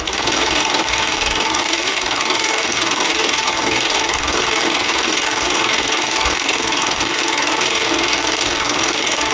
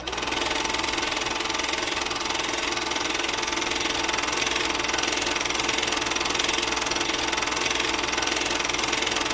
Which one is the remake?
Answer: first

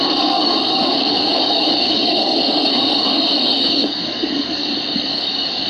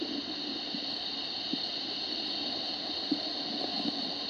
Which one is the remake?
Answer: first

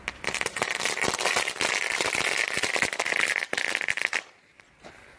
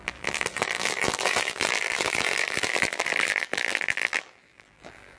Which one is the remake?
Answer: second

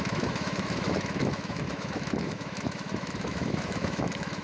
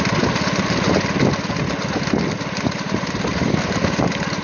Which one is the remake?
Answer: first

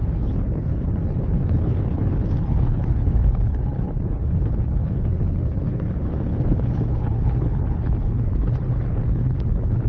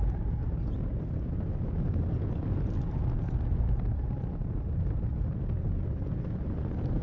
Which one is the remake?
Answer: first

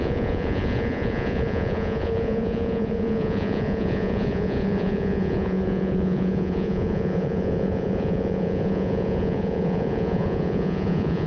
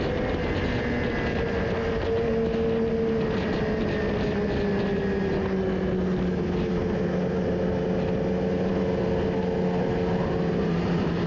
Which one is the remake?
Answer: first